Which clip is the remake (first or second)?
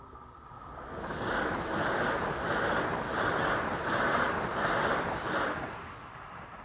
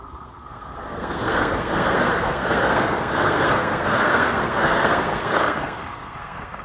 second